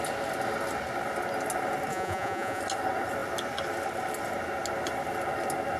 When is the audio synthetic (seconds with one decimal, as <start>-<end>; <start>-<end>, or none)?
1.9-2.6

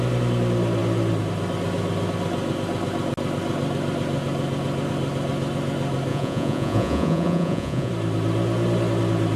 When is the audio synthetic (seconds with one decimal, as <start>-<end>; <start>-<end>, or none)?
6.1-7.9

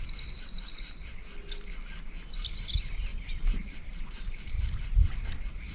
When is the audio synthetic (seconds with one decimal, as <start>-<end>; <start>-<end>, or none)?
3.1-4.8

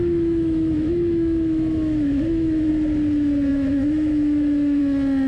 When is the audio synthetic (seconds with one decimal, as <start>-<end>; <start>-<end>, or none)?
0.0-2.7; 3.5-4.8